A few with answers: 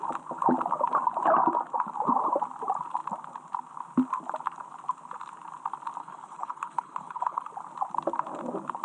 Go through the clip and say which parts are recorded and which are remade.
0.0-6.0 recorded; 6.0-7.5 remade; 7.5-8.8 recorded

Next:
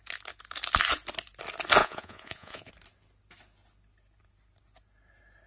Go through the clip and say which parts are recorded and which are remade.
0.0-1.8 recorded; 1.8-2.7 remade; 2.7-5.5 recorded

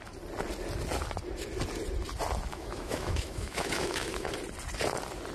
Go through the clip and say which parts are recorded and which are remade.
0.0-2.5 recorded; 2.5-4.3 remade; 4.3-5.3 recorded

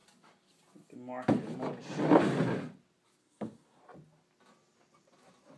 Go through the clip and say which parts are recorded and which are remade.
0.0-3.2 recorded; 3.2-3.8 remade; 3.8-5.6 recorded